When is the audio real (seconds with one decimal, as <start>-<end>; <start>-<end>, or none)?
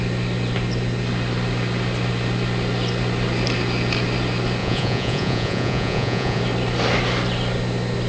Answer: 0.0-4.6; 6.4-8.1